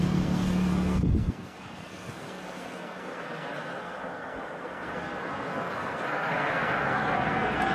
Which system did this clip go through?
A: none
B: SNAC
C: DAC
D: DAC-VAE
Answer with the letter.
B